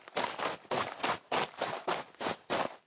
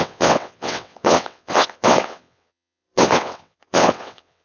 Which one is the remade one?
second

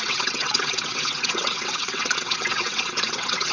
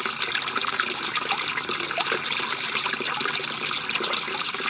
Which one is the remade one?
first